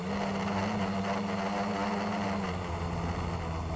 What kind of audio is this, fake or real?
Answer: real